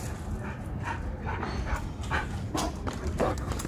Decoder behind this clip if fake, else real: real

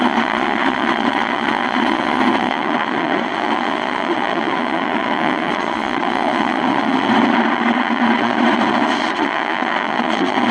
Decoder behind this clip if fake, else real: fake, vocoder, Vocos